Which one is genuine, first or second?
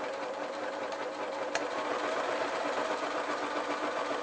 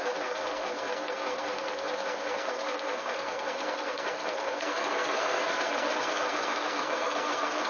first